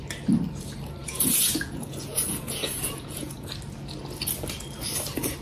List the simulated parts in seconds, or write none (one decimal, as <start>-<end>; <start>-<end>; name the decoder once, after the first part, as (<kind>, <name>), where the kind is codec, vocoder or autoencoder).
1.0-3.5 (vocoder, Vocos)